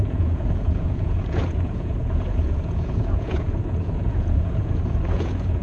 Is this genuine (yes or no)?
no